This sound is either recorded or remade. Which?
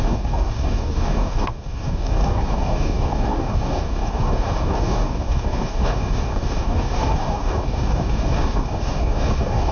remade